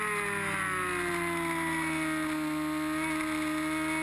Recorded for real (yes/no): yes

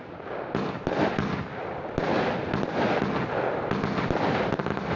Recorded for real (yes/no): yes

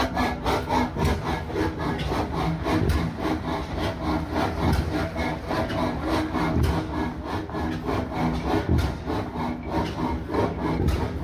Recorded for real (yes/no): yes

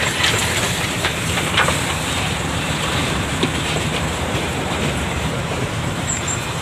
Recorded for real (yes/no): no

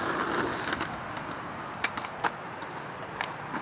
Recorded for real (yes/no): yes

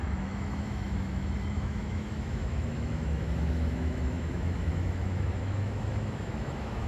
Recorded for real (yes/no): no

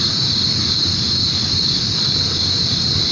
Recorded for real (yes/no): no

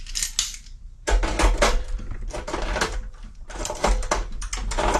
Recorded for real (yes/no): yes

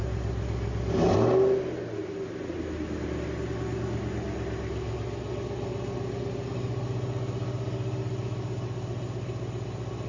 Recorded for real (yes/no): yes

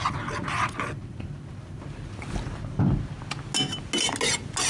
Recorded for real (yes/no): yes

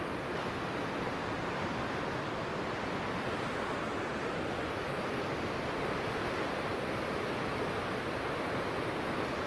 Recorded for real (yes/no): yes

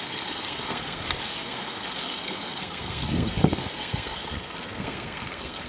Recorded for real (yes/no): no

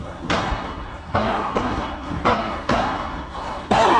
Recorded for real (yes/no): no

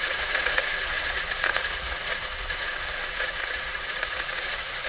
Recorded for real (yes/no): no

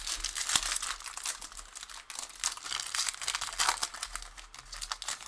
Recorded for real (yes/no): yes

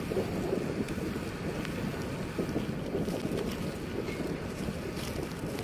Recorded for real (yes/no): yes